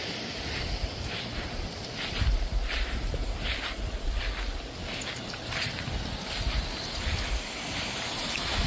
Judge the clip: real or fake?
real